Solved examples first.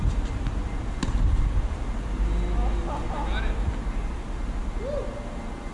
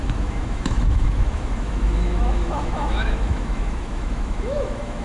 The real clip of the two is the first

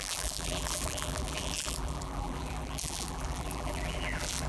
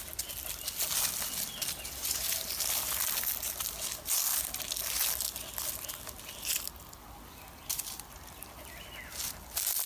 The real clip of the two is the second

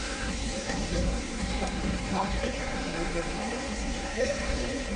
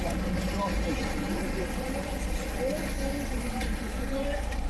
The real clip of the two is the second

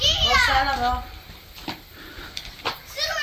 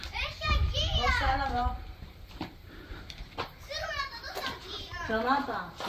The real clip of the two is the first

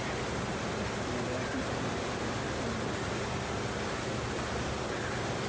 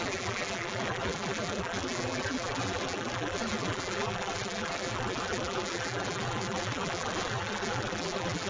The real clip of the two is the first